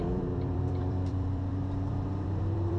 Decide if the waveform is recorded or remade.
remade